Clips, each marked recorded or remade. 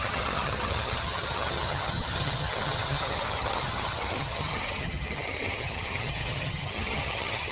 remade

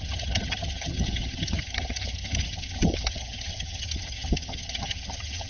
remade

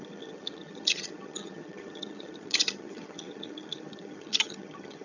remade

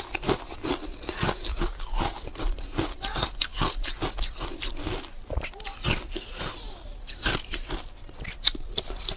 recorded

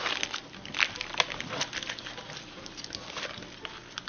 recorded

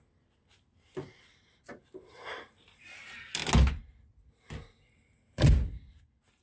recorded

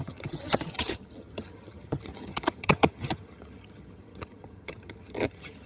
remade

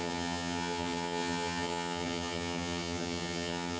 remade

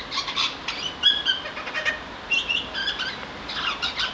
recorded